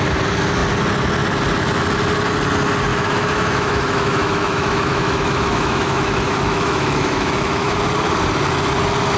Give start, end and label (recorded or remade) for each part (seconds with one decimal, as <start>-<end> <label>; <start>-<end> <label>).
0.0-2.9 recorded; 2.9-7.8 remade; 7.8-9.2 recorded